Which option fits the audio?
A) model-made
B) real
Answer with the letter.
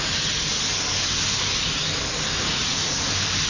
B